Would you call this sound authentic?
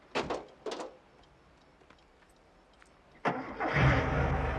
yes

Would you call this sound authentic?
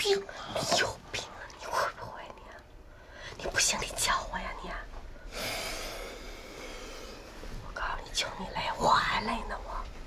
yes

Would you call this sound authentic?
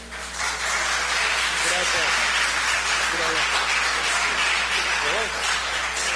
yes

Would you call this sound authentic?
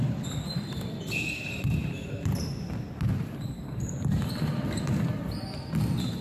yes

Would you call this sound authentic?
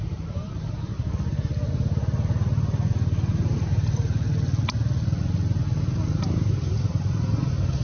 yes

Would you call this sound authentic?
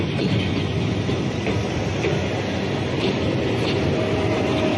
yes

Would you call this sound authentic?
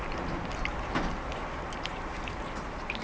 yes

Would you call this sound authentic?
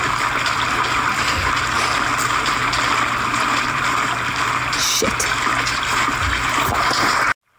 yes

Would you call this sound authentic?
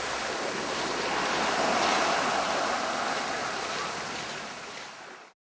yes